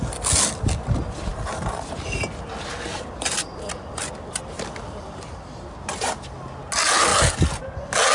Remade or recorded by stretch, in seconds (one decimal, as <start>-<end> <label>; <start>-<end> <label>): 0.0-8.1 recorded